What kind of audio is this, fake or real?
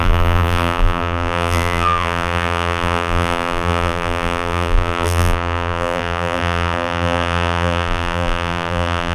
fake